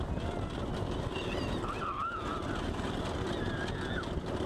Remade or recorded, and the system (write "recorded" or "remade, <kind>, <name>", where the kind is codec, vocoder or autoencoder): recorded